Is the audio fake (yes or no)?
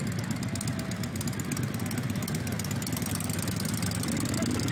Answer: no